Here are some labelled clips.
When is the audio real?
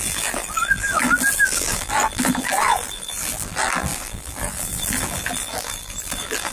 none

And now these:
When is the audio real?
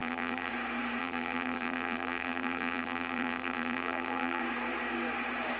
0.5-1.0; 4.4-5.6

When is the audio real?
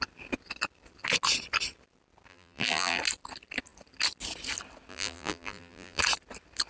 0.0-2.3; 3.0-4.9; 6.0-6.7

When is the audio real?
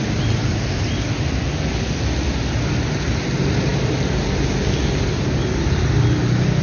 0.0-6.6